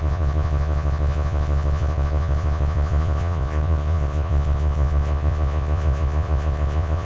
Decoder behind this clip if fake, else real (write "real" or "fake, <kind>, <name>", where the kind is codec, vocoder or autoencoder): fake, vocoder, Vocos